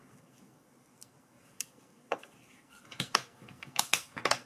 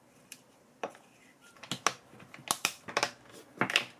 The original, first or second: second